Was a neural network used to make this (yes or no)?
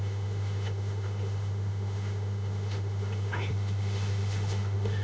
yes